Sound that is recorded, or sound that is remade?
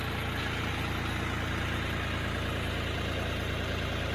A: recorded